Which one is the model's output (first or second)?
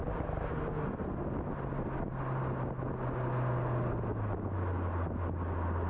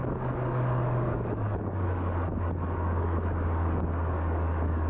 second